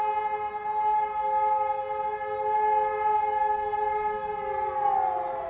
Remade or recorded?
recorded